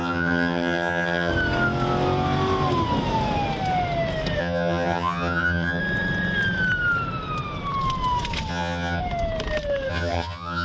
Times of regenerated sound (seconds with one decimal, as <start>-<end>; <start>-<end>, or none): 0.0-1.3; 4.4-5.8; 8.5-9.0; 9.9-10.6